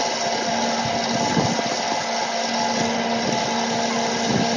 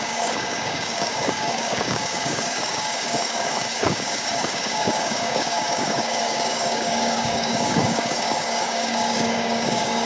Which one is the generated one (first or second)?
second